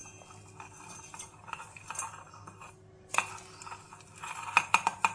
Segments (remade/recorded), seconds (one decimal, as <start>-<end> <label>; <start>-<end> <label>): 0.0-5.1 recorded